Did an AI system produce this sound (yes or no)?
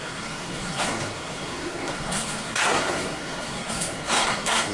yes